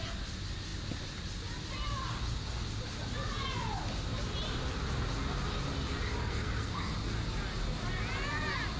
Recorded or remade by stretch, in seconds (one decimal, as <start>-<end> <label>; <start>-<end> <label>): 0.0-6.2 recorded; 6.2-6.9 remade; 6.9-8.8 recorded